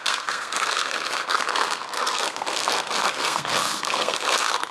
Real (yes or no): no